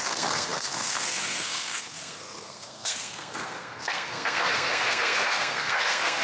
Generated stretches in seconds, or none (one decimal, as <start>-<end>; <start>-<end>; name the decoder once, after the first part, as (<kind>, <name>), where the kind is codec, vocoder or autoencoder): 0.0-6.2 (codec, SNAC)